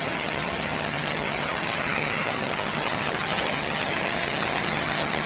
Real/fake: fake